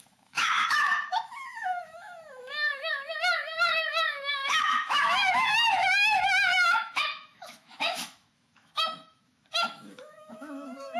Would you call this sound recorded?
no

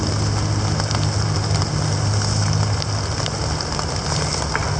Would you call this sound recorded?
yes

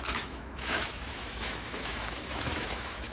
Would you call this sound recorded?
no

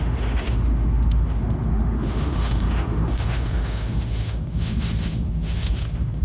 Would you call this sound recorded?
no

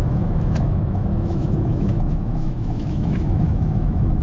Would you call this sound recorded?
no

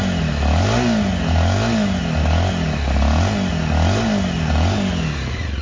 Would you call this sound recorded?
yes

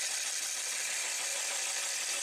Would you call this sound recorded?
yes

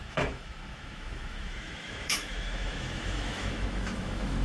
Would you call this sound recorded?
no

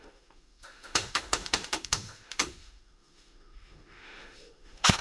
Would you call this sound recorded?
no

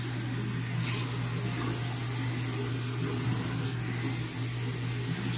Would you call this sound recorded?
yes